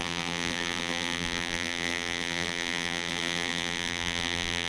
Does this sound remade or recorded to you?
remade